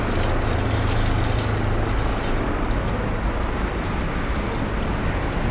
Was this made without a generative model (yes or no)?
yes